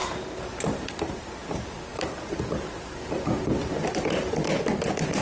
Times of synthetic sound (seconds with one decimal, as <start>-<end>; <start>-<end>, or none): none

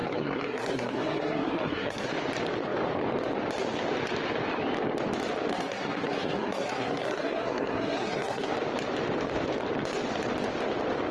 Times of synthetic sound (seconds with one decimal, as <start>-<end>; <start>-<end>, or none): 0.0-2.1; 5.5-8.5

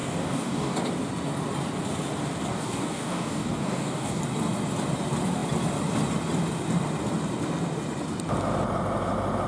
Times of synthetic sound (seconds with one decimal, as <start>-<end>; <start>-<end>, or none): 0.0-0.8; 2.5-4.2

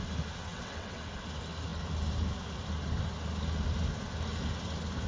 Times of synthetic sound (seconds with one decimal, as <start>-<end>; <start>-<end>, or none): 0.5-1.0

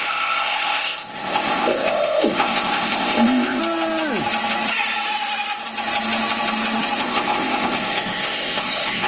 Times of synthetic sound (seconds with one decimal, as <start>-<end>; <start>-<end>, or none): 0.0-3.6; 7.0-9.1

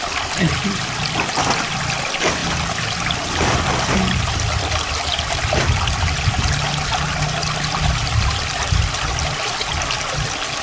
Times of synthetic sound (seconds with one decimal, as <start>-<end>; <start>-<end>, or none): none